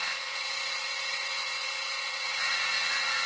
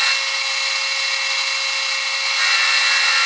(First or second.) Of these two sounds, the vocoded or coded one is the first